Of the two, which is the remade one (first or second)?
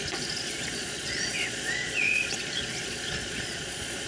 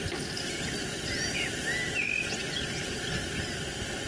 first